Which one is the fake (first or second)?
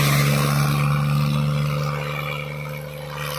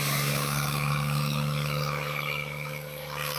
second